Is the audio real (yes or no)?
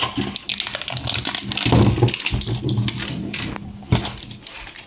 yes